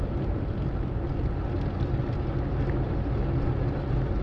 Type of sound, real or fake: real